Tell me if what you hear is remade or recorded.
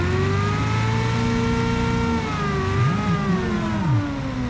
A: recorded